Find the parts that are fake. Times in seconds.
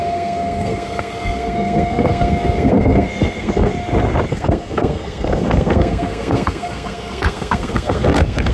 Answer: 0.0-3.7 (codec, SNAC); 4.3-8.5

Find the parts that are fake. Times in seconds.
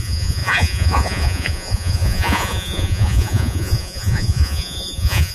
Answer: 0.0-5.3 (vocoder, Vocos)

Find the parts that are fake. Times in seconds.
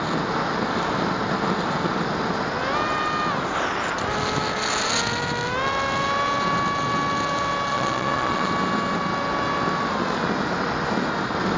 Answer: 7.7-8.5 (vocoder, Vocos)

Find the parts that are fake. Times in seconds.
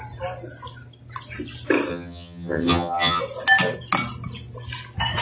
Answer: 1.9-3.2 (vocoder, HiFi-GAN)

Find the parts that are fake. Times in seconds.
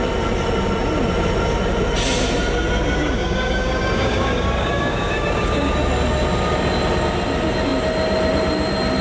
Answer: 3.0-5.7 (codec, DAC)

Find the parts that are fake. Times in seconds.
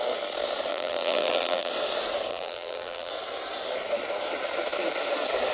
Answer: 0.7-1.7 (vocoder, BigVGAN v2); 2.3-3.1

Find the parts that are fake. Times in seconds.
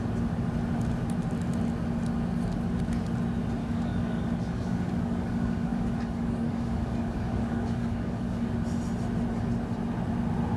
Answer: 3.6-8.5 (codec, DAC)